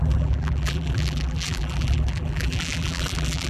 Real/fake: fake